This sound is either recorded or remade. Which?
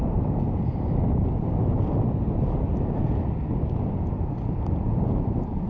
recorded